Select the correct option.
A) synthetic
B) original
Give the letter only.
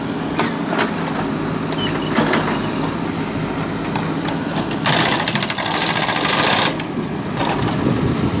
B